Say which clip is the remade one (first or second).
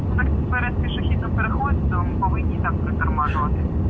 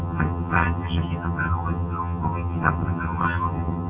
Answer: second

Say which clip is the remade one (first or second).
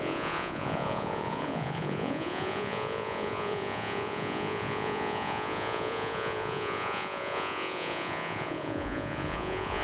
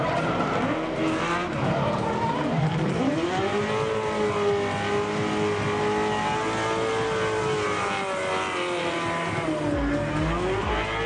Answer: first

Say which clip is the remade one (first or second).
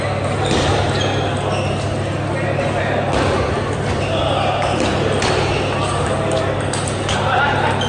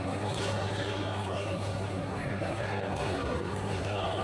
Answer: second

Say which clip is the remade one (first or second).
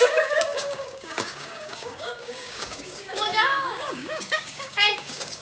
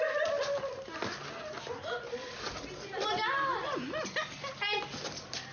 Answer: first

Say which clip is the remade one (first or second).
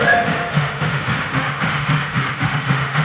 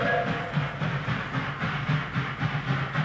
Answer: first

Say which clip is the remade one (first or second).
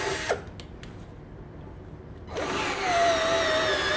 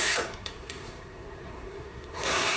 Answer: second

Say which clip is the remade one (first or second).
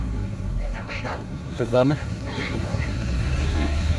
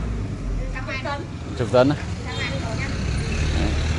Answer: first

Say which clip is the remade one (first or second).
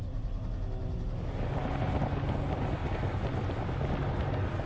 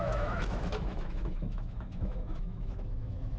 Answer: second